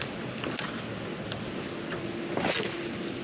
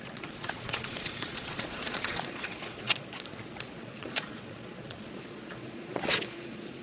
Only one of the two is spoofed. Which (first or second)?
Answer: second